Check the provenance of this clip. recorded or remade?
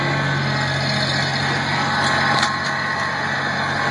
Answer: recorded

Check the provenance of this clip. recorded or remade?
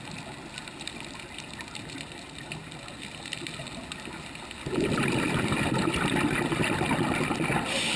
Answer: recorded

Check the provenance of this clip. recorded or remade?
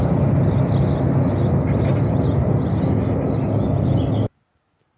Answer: recorded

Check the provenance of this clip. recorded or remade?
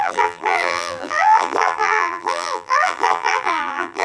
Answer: remade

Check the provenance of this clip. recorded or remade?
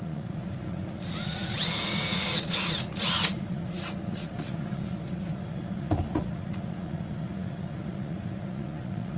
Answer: remade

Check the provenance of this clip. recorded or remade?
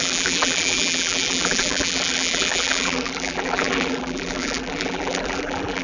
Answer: remade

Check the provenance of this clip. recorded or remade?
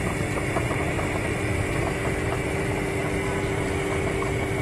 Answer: recorded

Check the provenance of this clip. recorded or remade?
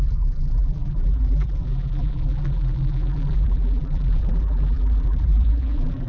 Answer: remade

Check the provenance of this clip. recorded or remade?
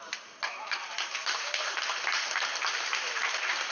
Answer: remade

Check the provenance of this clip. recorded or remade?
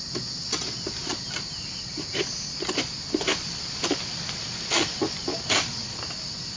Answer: recorded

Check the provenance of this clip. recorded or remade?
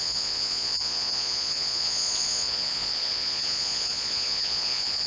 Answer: remade